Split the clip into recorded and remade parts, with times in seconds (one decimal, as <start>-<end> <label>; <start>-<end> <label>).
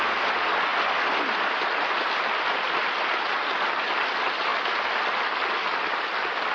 0.0-6.5 recorded